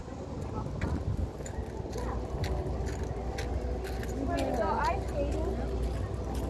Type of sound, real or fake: real